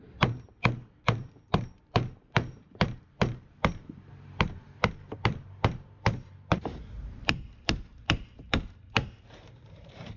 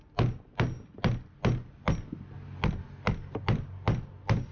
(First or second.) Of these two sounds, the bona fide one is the second